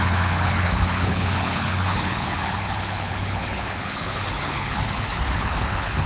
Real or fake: fake